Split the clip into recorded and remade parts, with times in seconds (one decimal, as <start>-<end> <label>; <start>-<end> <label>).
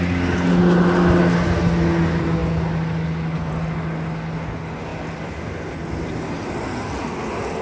0.0-7.6 recorded